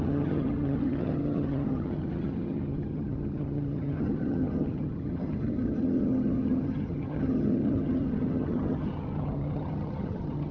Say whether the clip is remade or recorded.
remade